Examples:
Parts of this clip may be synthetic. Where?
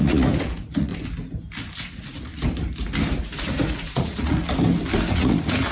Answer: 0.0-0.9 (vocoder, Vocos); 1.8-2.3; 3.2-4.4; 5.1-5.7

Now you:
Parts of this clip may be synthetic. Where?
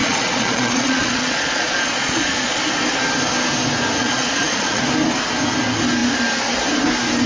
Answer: 0.0-2.6 (vocoder, Vocos); 4.0-4.8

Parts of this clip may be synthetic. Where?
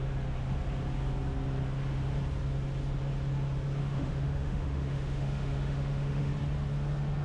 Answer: 3.8-6.3 (autoencoder, DAC-VAE)